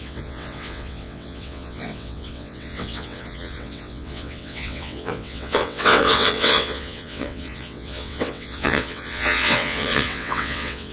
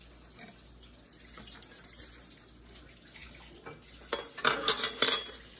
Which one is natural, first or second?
second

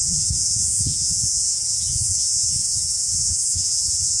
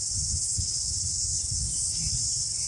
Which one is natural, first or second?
second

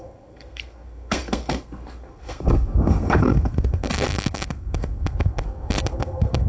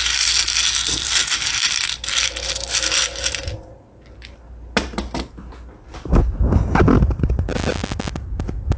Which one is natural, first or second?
second